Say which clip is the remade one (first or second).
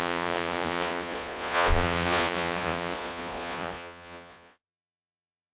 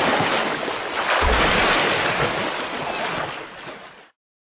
first